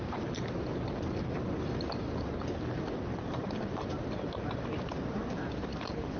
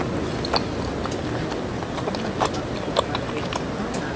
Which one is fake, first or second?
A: first